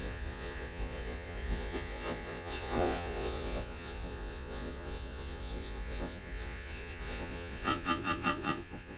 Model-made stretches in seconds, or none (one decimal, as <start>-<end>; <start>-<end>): 0.0-9.0